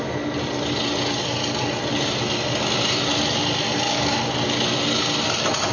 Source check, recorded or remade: recorded